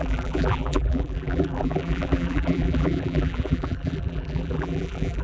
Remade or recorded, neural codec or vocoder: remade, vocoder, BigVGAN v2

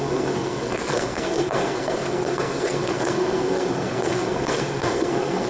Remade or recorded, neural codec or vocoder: remade, codec, SNAC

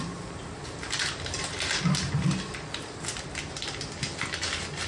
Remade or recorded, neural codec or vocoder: recorded